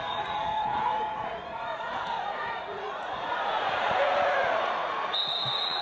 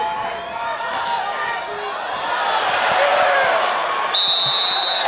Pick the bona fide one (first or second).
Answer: second